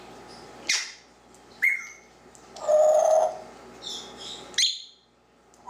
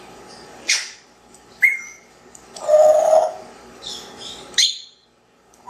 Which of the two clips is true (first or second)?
first